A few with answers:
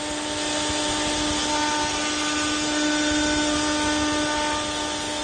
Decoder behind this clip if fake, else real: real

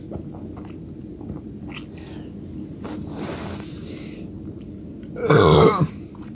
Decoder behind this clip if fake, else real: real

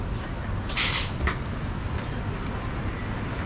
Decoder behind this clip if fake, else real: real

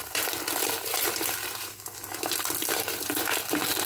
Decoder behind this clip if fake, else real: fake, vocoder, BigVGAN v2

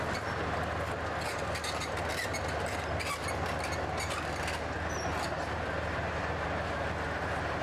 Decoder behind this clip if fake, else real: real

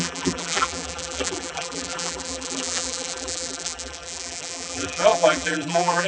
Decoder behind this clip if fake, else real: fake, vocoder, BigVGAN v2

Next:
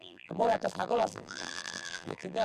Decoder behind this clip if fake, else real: fake, vocoder, BigVGAN v2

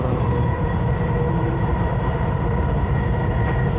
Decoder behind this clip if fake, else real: fake, vocoder, BigVGAN v2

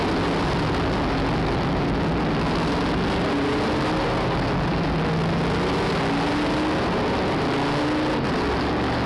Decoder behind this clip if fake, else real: real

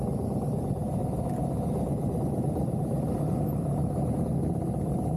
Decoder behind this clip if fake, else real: real